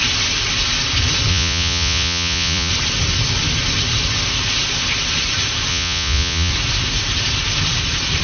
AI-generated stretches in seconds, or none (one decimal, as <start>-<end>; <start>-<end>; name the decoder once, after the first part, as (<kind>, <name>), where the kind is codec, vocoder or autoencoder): 1.3-2.7 (vocoder, Vocos); 5.7-6.5